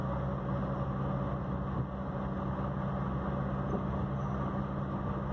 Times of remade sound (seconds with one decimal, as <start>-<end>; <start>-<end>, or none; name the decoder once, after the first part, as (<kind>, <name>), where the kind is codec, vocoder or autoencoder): none